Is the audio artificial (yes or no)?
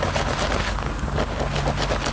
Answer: no